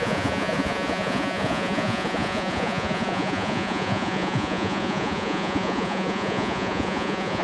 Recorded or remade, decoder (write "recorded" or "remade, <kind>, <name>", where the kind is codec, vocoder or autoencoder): remade, vocoder, Vocos